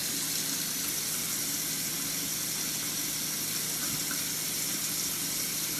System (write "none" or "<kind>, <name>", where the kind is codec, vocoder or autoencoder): none